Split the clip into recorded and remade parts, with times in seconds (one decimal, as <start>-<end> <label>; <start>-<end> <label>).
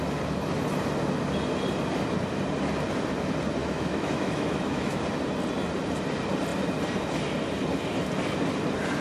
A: 0.0-3.6 recorded; 3.6-5.0 remade; 5.0-9.0 recorded